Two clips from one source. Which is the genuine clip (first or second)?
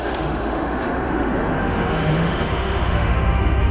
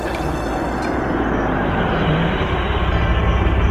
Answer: second